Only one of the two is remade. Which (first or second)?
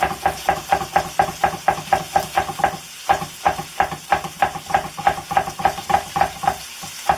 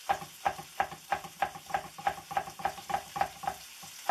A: second